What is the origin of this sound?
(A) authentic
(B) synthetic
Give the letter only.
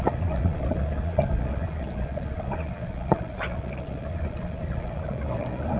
B